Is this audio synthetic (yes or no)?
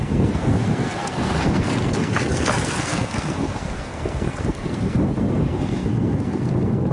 yes